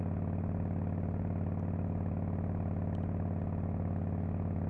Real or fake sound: real